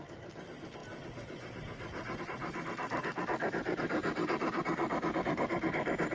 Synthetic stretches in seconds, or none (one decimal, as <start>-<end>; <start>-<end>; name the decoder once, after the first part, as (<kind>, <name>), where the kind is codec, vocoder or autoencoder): none